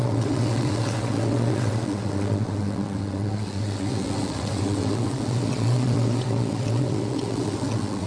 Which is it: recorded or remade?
remade